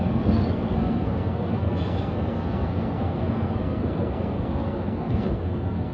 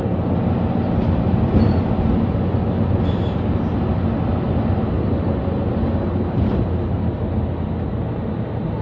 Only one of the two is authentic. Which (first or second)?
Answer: second